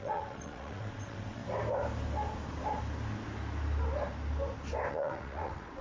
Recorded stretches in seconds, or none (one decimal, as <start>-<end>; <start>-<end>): 1.4-4.9

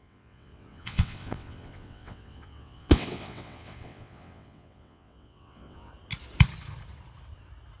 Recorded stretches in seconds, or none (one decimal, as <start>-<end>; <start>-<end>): 5.9-7.8

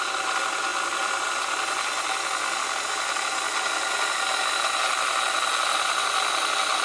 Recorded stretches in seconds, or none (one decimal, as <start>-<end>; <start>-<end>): 0.0-6.8

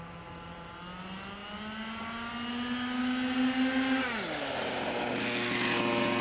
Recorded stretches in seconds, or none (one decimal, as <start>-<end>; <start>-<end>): 0.0-6.2

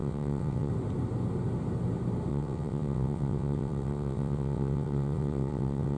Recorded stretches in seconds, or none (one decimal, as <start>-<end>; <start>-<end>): 0.7-2.3